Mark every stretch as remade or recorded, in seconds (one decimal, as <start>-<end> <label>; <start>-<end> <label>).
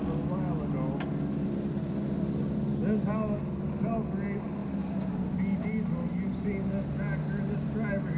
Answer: 0.0-8.2 recorded